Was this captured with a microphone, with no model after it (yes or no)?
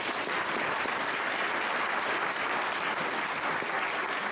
yes